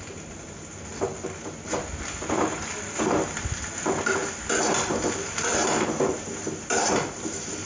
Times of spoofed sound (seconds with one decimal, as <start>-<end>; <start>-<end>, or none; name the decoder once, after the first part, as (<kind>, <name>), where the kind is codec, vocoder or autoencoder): none